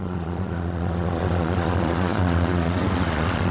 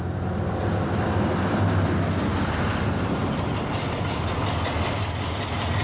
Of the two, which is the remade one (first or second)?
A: first